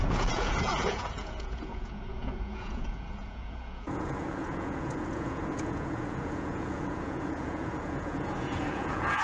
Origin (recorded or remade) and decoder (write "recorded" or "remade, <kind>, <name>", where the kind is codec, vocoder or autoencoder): remade, vocoder, Vocos